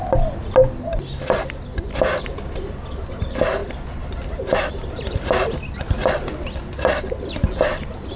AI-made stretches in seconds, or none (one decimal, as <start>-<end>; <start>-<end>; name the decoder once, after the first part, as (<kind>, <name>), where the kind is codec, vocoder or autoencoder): none